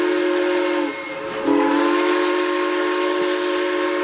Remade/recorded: recorded